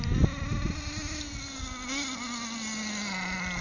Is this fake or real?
real